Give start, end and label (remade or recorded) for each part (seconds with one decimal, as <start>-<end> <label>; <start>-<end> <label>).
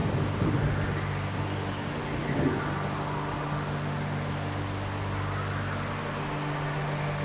0.0-7.2 recorded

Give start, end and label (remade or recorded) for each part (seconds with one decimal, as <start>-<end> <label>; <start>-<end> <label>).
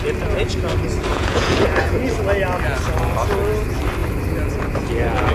0.0-1.1 recorded; 1.1-2.0 remade; 2.0-5.3 recorded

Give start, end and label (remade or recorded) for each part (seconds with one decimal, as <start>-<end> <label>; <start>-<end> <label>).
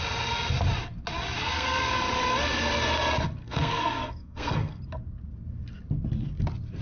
0.0-1.4 recorded; 1.4-1.9 remade; 1.9-3.4 recorded; 3.4-4.8 remade; 4.8-6.8 recorded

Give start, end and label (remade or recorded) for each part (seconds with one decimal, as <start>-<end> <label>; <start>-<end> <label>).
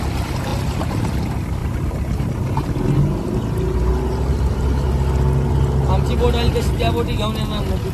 0.0-7.9 recorded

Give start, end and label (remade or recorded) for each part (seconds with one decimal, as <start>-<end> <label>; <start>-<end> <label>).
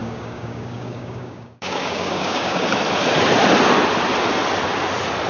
0.0-2.7 remade; 2.7-5.3 recorded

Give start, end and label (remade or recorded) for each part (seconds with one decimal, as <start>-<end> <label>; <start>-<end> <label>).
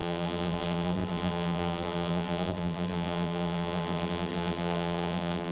0.0-5.5 remade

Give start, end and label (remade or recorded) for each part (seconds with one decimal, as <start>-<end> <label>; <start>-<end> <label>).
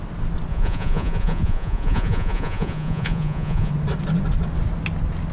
0.0-0.5 recorded; 0.5-3.7 remade; 3.7-5.3 recorded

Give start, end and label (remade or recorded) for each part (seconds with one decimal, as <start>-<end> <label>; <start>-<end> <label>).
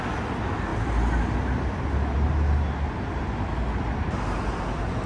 0.0-5.1 recorded